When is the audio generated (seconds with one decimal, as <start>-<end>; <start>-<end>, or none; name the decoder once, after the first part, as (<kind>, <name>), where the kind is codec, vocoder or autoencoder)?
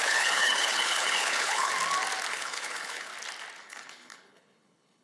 0.0-1.7 (codec, HILCodec); 2.3-3.1; 3.6-5.0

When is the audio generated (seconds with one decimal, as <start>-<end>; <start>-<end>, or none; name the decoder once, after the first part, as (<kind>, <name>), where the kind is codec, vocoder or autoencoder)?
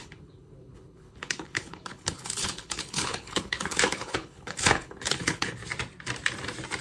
0.0-5.6 (codec, HILCodec)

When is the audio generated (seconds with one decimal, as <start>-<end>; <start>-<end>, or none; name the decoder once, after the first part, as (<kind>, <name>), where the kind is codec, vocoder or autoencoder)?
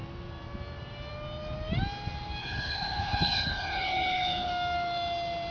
2.4-4.5 (codec, HILCodec)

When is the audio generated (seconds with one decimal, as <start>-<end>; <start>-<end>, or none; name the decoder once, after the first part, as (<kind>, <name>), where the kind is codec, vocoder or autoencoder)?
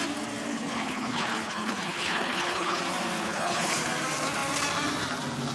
0.5-2.8 (codec, HILCodec); 3.2-3.8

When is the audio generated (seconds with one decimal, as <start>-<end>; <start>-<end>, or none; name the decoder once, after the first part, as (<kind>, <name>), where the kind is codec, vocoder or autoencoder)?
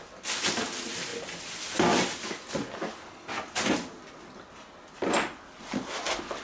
none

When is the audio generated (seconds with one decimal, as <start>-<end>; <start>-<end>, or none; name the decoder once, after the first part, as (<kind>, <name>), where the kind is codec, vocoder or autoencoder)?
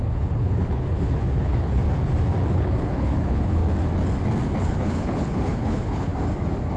0.0-1.8 (codec, HILCodec); 2.5-3.6; 4.6-6.1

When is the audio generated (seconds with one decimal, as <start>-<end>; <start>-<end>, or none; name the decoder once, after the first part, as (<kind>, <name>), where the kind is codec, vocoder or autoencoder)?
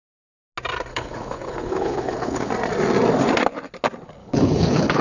0.9-2.5 (codec, HILCodec); 4.2-5.0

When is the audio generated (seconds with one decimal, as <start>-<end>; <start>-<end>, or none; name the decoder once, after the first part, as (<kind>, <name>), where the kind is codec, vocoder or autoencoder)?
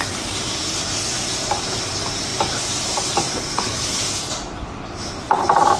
3.5-4.0 (codec, HILCodec)